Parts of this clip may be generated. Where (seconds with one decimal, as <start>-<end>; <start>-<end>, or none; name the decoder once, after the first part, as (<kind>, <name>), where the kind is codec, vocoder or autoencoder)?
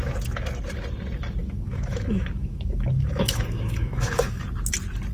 1.4-4.4 (autoencoder, DAC-VAE)